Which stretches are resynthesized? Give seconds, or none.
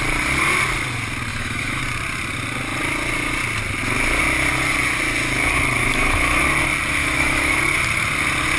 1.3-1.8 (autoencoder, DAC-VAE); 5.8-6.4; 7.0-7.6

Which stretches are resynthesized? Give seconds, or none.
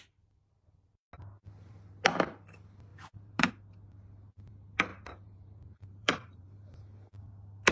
2.9-3.5 (vocoder, BigVGAN v2); 4.9-6.8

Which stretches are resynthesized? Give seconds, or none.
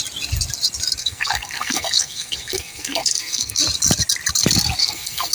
1.0-3.6 (codec, SNAC); 4.8-5.3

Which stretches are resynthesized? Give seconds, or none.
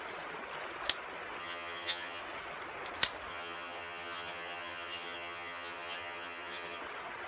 1.4-2.2 (vocoder, HiFi-GAN); 3.3-6.8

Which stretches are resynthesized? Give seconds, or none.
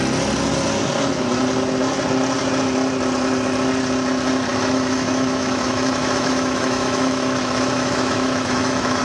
4.5-9.0 (autoencoder, DAC-VAE)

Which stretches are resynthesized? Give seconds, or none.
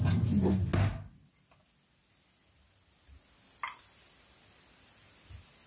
none